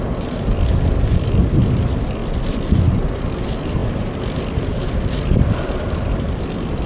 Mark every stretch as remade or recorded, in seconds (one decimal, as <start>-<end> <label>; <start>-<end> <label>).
0.0-2.2 recorded; 2.2-3.2 remade; 3.2-3.8 recorded; 3.8-6.4 remade; 6.4-6.9 recorded